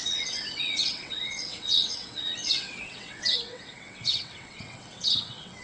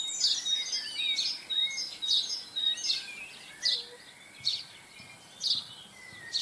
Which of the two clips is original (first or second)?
second